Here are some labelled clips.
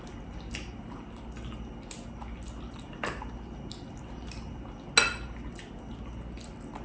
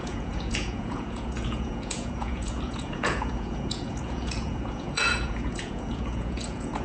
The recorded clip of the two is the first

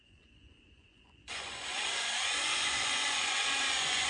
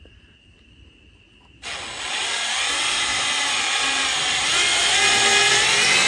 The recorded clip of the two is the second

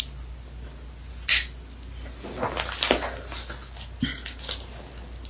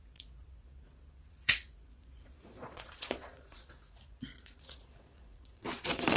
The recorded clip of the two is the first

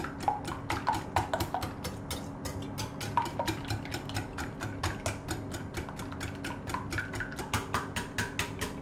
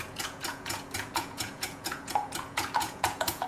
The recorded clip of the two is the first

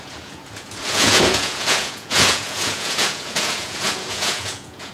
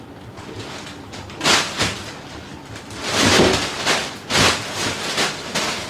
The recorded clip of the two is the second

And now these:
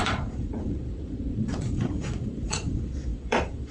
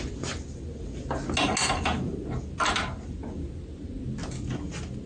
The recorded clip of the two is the second